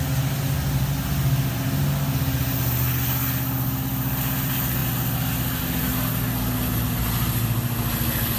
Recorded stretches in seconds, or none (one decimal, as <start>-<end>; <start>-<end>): 0.0-8.4